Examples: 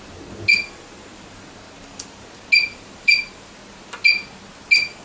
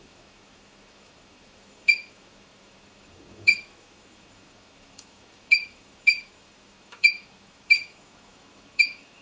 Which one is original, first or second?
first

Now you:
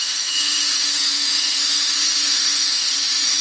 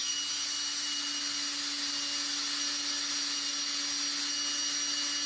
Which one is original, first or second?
second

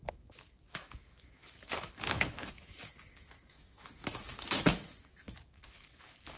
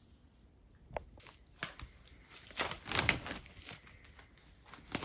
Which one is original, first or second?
second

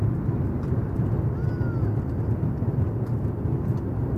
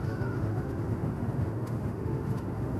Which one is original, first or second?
first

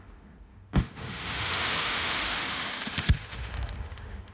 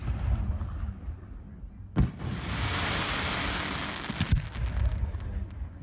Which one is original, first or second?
second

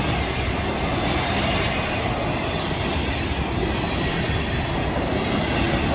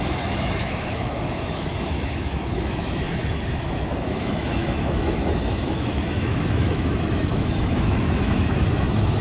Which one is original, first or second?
first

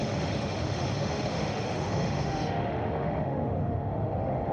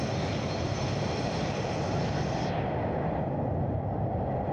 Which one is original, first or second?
second